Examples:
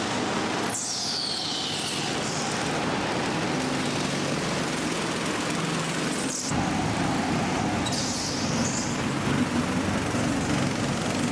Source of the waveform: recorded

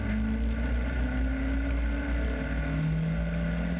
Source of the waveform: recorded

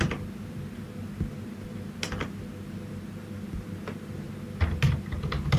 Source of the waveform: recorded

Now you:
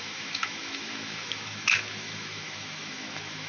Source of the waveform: remade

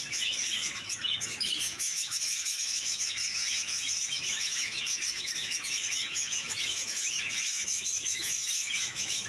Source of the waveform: remade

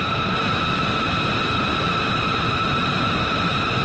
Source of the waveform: remade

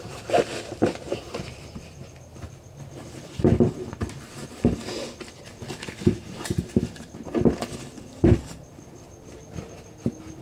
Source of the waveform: recorded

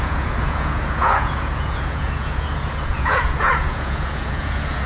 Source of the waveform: remade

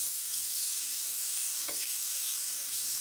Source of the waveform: remade